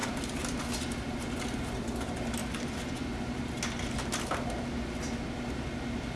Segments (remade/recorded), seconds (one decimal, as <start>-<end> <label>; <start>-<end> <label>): 0.0-6.2 recorded